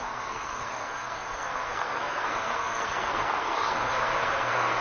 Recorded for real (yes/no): no